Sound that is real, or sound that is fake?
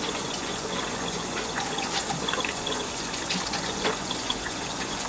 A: fake